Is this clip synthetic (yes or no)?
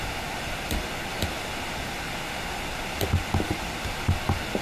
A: no